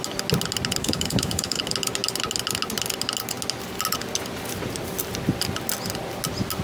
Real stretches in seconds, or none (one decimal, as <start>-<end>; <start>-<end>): 0.0-0.8; 1.6-6.6